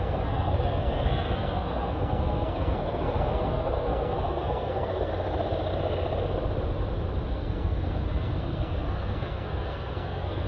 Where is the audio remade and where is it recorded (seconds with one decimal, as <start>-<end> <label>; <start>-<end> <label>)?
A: 0.0-5.1 remade; 5.1-7.3 recorded; 7.3-10.5 remade